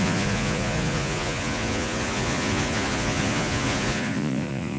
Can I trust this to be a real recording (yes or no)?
no